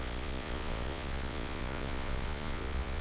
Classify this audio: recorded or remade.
remade